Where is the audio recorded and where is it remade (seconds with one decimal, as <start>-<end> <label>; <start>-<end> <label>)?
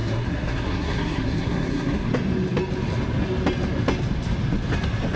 0.0-2.1 remade; 2.1-5.2 recorded